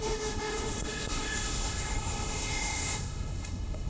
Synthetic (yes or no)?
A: yes